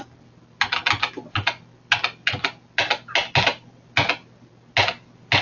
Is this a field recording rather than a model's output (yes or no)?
yes